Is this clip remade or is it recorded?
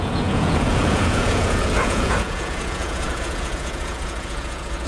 remade